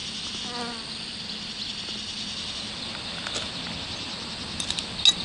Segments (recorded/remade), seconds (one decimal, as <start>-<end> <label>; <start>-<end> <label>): 0.0-5.2 recorded